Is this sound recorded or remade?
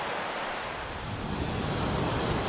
recorded